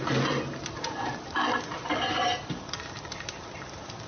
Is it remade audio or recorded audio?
remade